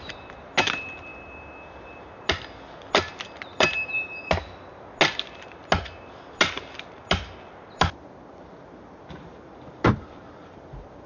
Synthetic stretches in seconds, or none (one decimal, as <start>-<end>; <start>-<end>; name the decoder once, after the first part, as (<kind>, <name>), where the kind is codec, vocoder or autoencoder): none